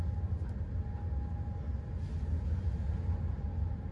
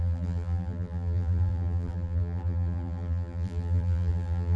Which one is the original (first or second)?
first